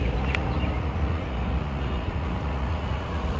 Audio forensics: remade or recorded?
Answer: remade